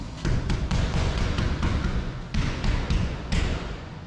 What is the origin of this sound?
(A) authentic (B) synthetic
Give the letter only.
B